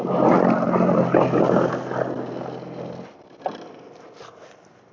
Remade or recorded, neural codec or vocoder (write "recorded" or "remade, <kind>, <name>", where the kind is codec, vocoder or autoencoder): recorded